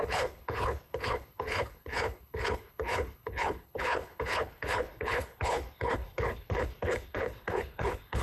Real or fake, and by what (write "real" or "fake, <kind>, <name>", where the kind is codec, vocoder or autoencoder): fake, codec, HILCodec